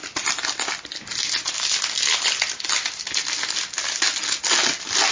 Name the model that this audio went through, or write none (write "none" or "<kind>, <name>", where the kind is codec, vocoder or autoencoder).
none